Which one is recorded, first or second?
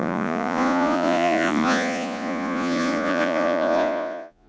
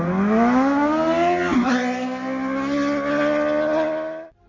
second